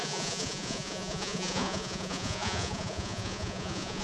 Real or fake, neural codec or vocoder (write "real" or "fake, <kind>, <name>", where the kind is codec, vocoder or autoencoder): fake, vocoder, Vocos